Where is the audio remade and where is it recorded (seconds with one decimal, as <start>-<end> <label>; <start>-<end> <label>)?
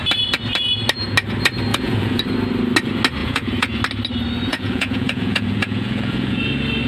0.0-1.7 recorded; 1.7-2.2 remade; 2.2-3.2 recorded; 3.2-3.8 remade; 3.8-4.5 recorded; 4.5-6.4 remade; 6.4-6.9 recorded